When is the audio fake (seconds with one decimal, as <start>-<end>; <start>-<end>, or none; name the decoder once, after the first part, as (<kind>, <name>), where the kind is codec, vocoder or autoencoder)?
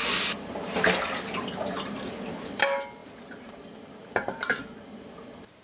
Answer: none